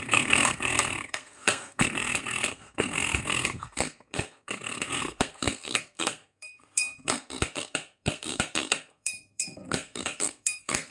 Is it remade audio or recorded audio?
remade